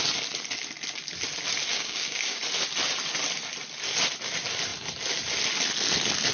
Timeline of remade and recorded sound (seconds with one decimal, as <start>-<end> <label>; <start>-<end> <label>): 0.0-1.7 recorded; 1.7-2.4 remade; 2.4-6.3 recorded